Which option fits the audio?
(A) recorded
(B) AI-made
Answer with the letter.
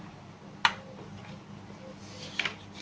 A